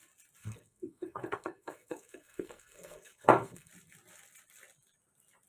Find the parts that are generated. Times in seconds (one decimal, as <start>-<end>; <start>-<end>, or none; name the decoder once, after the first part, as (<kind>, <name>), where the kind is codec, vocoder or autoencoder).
0.4-3.7 (codec, SNAC)